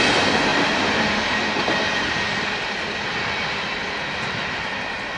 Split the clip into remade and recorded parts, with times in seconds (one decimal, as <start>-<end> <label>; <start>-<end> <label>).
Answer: 0.0-5.2 recorded